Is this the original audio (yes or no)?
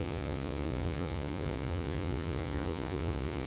no